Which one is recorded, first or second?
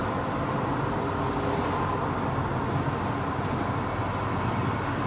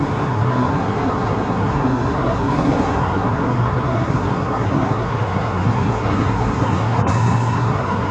first